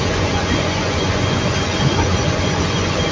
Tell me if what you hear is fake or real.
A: fake